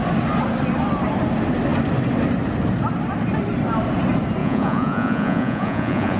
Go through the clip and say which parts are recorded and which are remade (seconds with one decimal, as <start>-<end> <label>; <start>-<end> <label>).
0.0-4.4 recorded; 4.4-6.2 remade